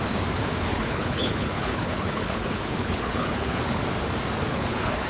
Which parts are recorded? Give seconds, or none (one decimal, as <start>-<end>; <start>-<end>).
0.0-0.7; 3.8-4.5